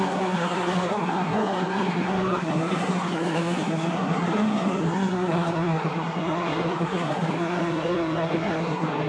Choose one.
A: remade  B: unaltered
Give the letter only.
A